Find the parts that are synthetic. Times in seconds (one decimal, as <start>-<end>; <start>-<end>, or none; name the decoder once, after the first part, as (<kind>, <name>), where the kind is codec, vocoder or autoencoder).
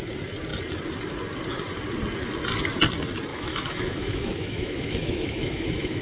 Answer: 3.3-6.0 (autoencoder, DAC-VAE)